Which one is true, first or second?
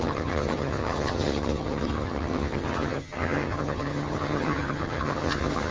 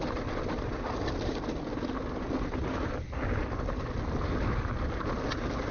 second